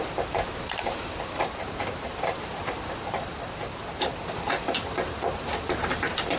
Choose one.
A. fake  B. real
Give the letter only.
A